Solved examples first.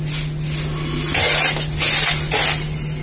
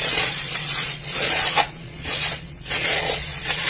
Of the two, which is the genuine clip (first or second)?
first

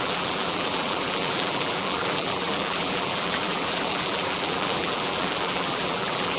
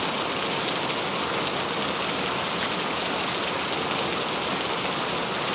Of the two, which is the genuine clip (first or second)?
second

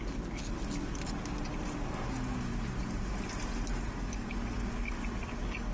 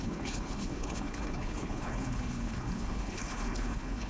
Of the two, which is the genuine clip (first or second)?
first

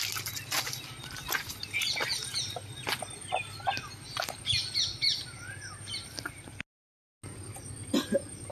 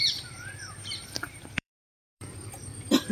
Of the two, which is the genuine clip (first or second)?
first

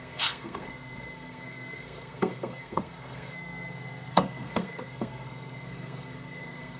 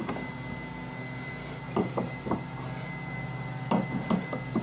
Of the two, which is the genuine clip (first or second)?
second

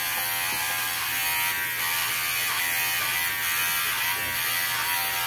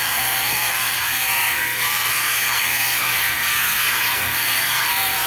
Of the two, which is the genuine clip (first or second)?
first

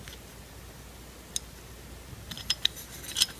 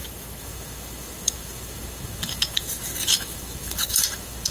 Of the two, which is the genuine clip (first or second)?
first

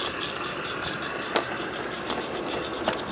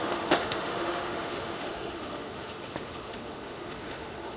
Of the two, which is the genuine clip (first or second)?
first